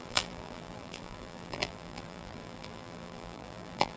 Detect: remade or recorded remade